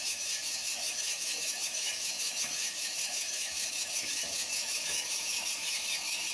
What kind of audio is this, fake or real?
fake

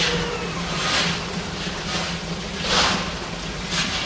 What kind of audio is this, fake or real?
real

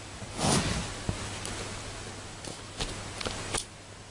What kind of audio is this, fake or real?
real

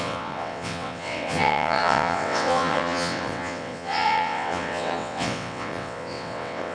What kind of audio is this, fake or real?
fake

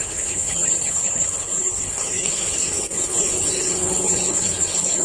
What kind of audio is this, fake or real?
fake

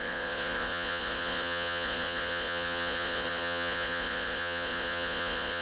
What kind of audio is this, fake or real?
fake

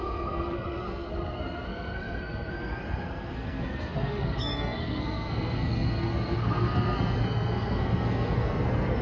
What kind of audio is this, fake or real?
fake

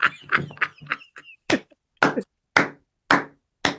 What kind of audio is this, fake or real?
real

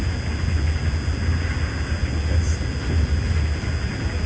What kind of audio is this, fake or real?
real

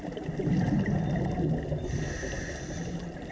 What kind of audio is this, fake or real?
real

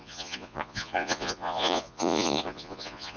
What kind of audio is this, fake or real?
fake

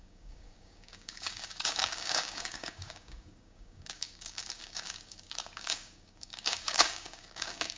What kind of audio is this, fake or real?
fake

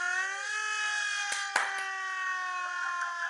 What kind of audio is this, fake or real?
real